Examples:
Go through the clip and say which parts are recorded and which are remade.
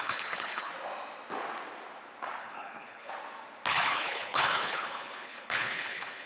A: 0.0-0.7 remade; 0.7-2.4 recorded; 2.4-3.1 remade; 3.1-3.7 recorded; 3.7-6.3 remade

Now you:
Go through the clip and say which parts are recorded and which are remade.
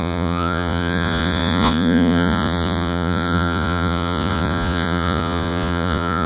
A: 0.0-6.3 remade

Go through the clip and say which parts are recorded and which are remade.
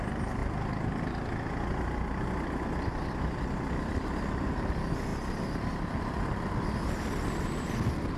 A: 0.0-8.2 recorded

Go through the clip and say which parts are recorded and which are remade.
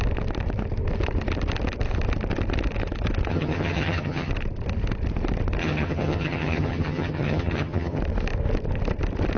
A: 0.0-3.3 recorded; 3.3-4.3 remade; 4.3-5.6 recorded; 5.6-8.0 remade; 8.0-9.4 recorded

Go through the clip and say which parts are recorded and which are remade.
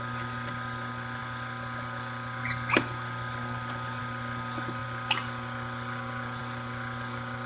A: 0.0-7.5 recorded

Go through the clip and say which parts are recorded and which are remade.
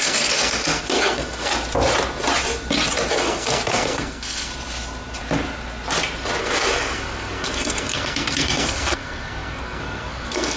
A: 0.0-1.5 remade; 1.5-3.1 recorded; 3.1-4.5 remade; 4.5-6.4 recorded; 6.4-10.6 remade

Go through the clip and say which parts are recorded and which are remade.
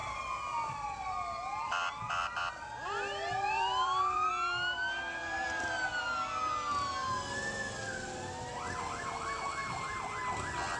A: 0.0-4.3 remade; 4.3-5.2 recorded; 5.2-6.0 remade; 6.0-9.6 recorded; 9.6-10.2 remade; 10.2-10.8 recorded